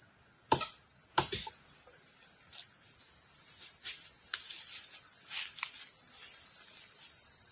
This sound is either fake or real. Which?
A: real